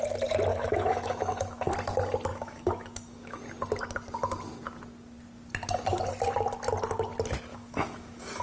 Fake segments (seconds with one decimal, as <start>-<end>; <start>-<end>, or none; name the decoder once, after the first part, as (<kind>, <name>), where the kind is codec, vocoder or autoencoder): 0.5-1.7 (autoencoder, DAC-VAE); 2.3-3.4; 7.5-8.4